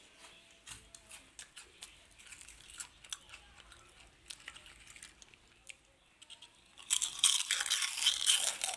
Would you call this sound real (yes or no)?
yes